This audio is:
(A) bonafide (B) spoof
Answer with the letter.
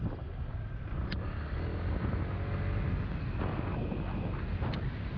A